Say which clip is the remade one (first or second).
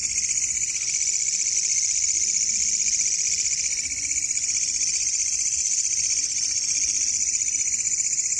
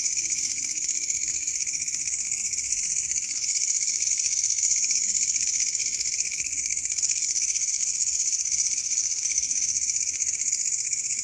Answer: second